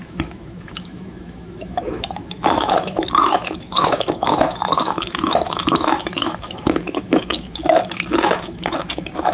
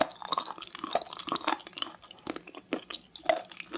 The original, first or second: second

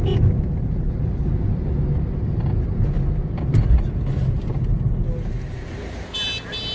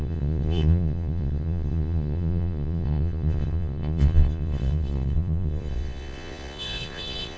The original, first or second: first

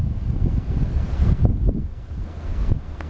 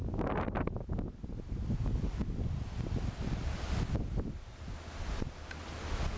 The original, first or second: second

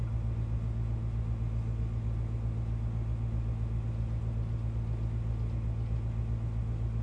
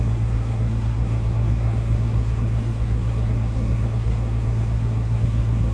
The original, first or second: first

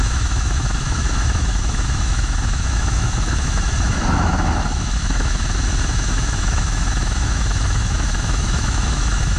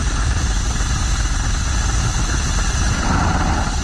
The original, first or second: second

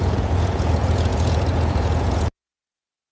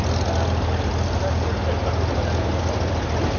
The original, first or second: second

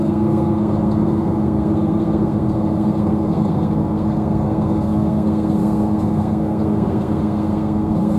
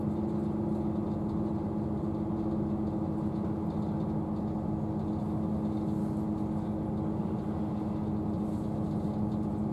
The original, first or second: second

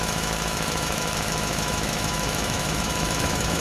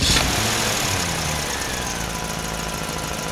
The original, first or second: second